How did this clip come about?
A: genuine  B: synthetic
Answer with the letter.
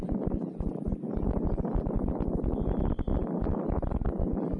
A